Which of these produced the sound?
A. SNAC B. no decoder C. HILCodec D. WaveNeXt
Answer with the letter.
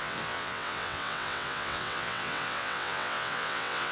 D